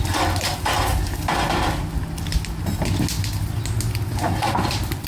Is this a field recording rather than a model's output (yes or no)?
yes